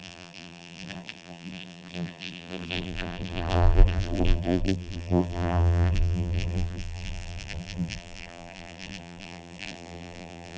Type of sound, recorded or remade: remade